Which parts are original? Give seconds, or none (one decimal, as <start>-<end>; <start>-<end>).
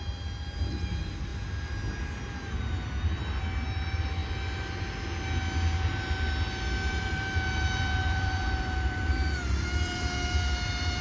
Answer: 1.3-3.8; 4.2-6.9